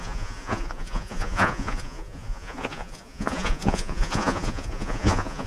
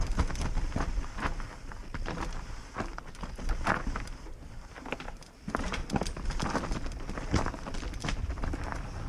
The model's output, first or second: first